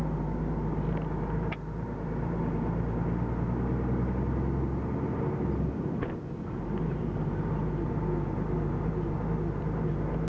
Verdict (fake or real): real